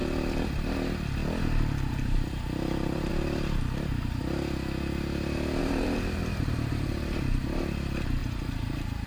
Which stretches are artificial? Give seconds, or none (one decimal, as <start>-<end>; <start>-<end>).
0.5-1.2; 1.9-3.1; 5.6-9.1